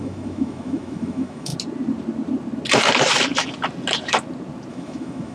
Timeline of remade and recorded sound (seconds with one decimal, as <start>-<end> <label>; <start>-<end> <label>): 0.0-1.5 remade; 1.5-4.7 recorded; 4.7-5.3 remade